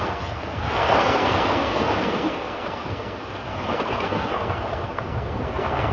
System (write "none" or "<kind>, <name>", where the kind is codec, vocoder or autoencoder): codec, SNAC